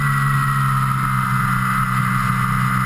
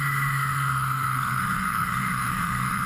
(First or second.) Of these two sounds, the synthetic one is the second